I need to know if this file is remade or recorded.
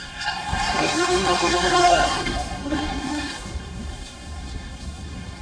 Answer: remade